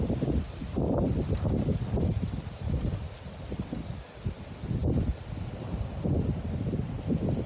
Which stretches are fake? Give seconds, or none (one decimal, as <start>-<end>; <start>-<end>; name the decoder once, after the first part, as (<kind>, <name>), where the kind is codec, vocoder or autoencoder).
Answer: none

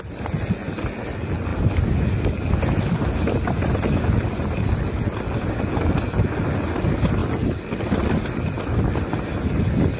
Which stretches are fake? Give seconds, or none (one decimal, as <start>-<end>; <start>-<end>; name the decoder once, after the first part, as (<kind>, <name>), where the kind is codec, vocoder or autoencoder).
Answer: none

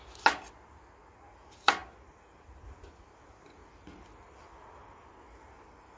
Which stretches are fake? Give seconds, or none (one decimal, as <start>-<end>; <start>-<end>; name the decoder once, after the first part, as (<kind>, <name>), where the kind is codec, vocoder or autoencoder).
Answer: none

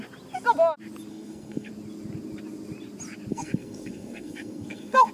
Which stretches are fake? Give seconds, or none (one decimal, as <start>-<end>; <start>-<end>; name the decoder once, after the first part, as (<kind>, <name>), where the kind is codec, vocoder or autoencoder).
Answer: 1.1-1.7 (codec, SNAC); 3.3-5.1

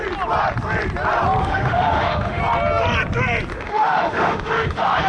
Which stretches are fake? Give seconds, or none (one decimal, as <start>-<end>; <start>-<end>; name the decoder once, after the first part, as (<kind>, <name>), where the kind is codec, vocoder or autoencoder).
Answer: 1.4-2.4 (autoencoder, DAC-VAE); 3.5-5.1

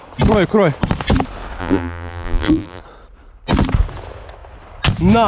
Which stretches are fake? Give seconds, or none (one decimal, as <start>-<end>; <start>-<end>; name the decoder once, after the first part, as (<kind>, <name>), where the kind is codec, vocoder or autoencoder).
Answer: 1.6-2.8 (vocoder, BigVGAN v2)